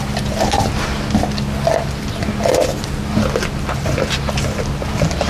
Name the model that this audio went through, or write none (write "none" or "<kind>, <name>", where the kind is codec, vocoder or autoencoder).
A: none